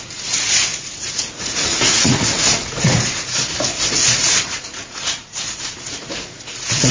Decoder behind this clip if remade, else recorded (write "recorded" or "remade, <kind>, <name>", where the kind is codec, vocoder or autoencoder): remade, vocoder, Vocos